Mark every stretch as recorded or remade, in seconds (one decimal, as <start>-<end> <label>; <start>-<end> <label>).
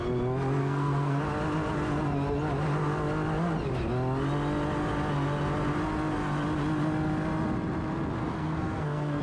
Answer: 0.0-0.6 recorded; 0.6-1.2 remade; 1.2-8.2 recorded; 8.2-9.2 remade